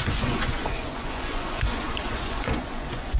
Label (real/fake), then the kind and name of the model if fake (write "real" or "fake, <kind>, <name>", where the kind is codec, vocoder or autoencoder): fake, vocoder, Vocos